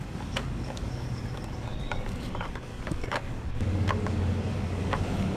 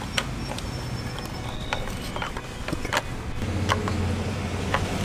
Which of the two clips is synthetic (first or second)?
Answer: first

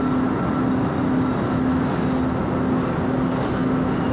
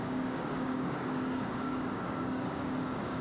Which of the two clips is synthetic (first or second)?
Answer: second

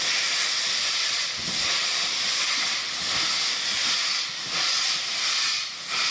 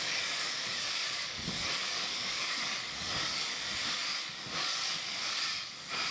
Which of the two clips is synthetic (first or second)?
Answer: second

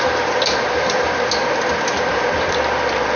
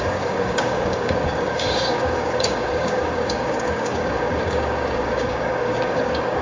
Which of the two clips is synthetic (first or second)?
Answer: second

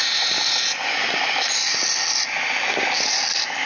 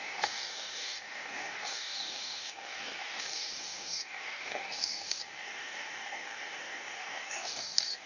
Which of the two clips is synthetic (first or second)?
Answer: second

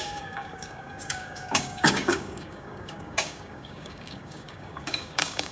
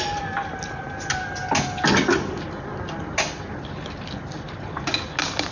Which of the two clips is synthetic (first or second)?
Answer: first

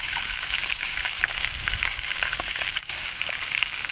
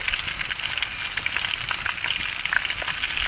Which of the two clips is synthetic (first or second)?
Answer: first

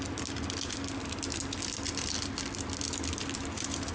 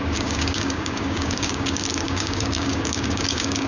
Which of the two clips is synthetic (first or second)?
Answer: second